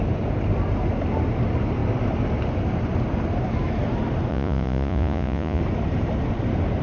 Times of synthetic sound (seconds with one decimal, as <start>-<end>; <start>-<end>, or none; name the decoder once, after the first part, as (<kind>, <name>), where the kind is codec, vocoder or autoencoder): 4.3-5.6 (vocoder, Vocos)

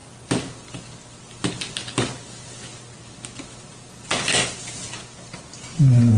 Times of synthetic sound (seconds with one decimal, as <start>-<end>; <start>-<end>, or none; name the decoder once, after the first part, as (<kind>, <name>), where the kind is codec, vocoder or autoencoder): none

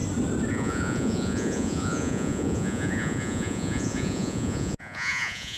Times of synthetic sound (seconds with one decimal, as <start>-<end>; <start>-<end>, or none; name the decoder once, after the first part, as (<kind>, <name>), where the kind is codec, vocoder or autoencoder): 0.5-5.6 (vocoder, Vocos)